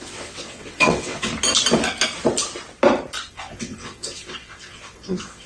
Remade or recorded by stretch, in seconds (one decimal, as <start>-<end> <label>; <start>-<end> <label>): 0.0-1.3 remade; 1.3-3.3 recorded; 3.3-5.5 remade